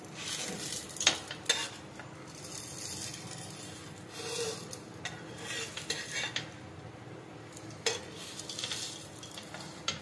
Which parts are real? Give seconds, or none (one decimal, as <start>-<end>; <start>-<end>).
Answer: 0.0-10.0